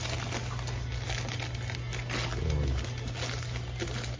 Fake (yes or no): no